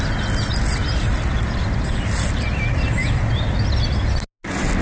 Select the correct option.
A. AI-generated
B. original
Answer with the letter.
B